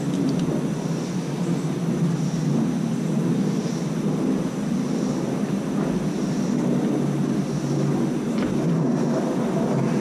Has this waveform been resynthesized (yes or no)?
no